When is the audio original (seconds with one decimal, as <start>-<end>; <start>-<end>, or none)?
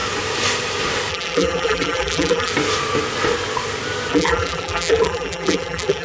0.0-1.1; 2.5-4.1